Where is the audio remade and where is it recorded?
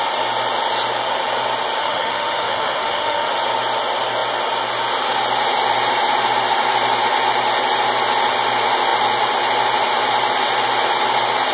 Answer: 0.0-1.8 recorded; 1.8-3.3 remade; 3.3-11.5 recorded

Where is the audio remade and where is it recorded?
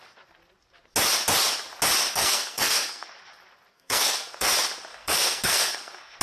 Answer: 0.0-2.1 recorded; 2.1-3.1 remade; 3.1-3.7 recorded; 3.7-4.5 remade; 4.5-4.9 recorded; 4.9-6.2 remade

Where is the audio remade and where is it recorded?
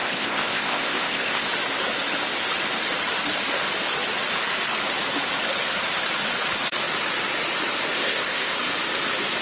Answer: 0.0-1.5 remade; 1.5-7.9 recorded; 7.9-8.5 remade; 8.5-9.4 recorded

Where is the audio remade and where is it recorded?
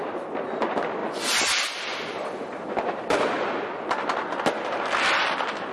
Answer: 0.0-1.0 recorded; 1.0-4.4 remade; 4.4-5.7 recorded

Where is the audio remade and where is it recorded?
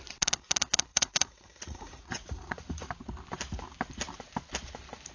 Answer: 0.0-0.9 recorded; 0.9-2.9 remade; 2.9-5.1 recorded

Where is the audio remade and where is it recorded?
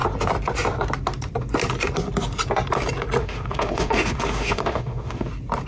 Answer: 0.0-3.2 recorded; 3.2-5.3 remade; 5.3-5.7 recorded